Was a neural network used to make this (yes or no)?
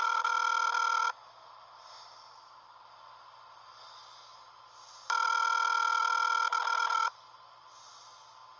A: no